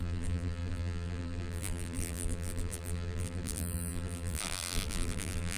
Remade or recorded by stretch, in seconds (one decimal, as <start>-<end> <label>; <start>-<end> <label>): 0.0-5.6 remade